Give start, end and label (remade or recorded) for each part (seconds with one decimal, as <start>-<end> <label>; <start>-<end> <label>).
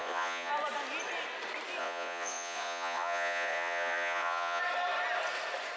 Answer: 0.0-0.5 remade; 0.5-1.8 recorded; 1.8-4.6 remade; 4.6-5.8 recorded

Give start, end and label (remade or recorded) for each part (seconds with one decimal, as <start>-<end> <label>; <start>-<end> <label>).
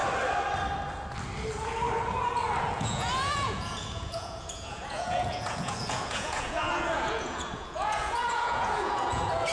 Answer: 0.0-2.6 recorded; 2.6-9.5 remade